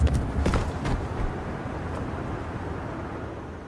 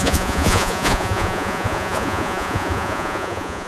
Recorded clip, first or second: first